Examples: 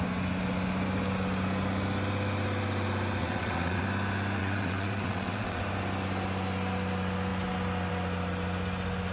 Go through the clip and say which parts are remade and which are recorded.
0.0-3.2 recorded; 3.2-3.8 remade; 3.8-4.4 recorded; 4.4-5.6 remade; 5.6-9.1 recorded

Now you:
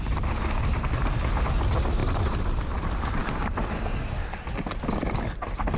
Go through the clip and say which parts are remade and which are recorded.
0.0-5.8 recorded

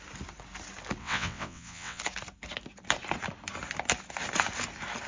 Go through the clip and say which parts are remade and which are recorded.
0.0-1.0 recorded; 1.0-2.0 remade; 2.0-5.1 recorded

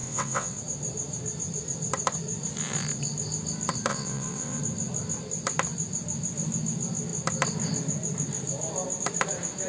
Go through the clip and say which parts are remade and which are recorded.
0.0-0.6 remade; 0.6-3.9 recorded; 3.9-4.6 remade; 4.6-9.7 recorded